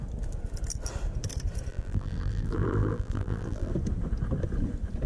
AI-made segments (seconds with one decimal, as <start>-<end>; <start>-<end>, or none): 1.7-3.7